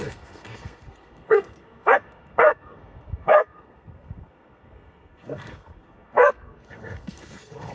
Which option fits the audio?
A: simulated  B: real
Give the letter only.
A